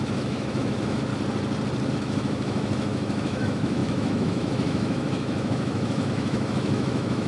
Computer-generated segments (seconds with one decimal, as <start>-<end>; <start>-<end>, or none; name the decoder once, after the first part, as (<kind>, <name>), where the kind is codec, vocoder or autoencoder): 0.0-1.1 (autoencoder, DAC-VAE); 1.9-7.3